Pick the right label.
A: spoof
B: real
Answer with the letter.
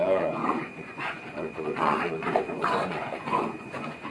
A